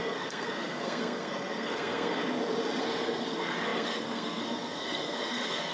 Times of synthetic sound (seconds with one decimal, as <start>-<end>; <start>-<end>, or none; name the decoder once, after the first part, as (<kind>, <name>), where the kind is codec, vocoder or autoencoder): 0.0-2.2 (codec, SNAC); 2.8-5.7